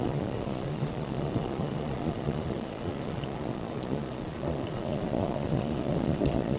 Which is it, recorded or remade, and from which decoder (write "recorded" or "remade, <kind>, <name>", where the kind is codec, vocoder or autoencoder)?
remade, vocoder, Vocos